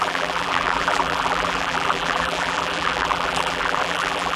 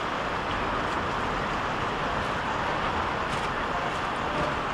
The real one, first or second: second